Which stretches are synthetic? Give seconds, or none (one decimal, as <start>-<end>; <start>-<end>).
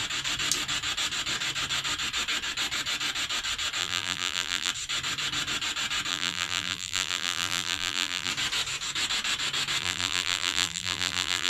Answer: 3.8-4.7; 6.1-8.3; 9.8-11.5